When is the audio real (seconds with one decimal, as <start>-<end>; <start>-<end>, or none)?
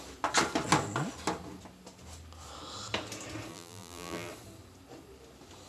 0.0-3.5; 4.3-5.7